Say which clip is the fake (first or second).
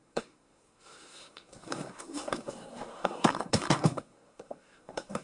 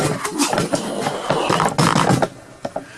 first